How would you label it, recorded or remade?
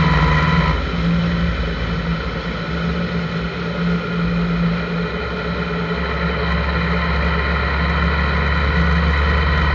recorded